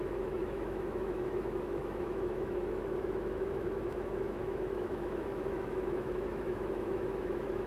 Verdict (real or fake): fake